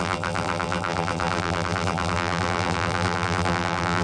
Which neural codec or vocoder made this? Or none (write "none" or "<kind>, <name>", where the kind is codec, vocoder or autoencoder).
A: vocoder, BigVGAN v2